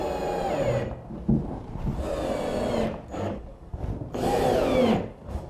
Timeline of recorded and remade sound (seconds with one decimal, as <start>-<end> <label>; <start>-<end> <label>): 0.0-3.1 recorded; 3.1-3.7 remade; 3.7-5.1 recorded; 5.1-5.5 remade